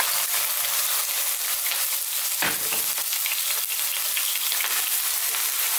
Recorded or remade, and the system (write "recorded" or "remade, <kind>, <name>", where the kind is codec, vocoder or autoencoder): recorded